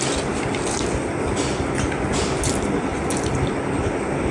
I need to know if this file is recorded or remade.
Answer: recorded